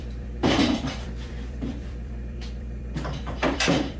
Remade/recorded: remade